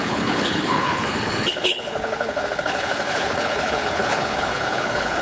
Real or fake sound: fake